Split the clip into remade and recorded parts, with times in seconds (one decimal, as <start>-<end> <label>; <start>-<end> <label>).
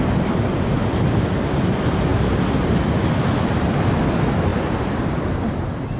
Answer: 0.0-6.0 recorded